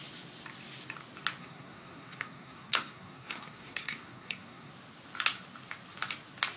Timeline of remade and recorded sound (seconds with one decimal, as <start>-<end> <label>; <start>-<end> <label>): 0.0-1.4 recorded; 1.4-4.7 remade; 4.7-6.6 recorded

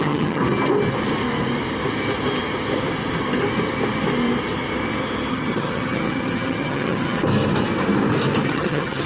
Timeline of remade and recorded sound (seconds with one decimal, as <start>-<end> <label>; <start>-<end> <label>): 0.0-0.4 remade; 0.4-5.3 recorded; 5.3-7.2 remade; 7.2-8.5 recorded; 8.5-9.1 remade